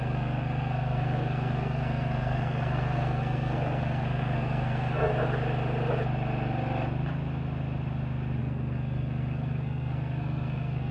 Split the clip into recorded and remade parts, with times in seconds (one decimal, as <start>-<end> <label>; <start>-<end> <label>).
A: 0.0-5.1 remade; 5.1-8.4 recorded; 8.4-10.9 remade